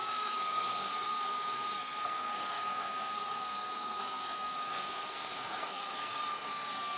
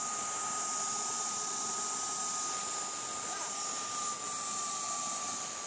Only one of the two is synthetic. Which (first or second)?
first